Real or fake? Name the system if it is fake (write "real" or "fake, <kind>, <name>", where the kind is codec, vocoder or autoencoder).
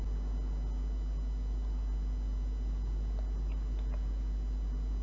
real